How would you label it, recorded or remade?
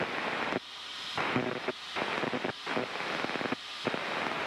recorded